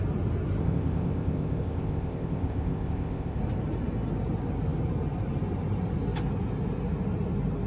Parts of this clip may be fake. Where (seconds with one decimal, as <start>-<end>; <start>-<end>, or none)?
0.6-3.4